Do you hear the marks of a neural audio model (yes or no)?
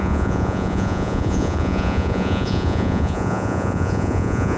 yes